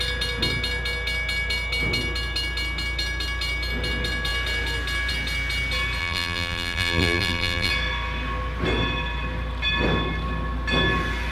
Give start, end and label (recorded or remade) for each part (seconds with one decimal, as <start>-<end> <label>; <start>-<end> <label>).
0.0-6.0 recorded; 6.0-7.7 remade; 7.7-11.3 recorded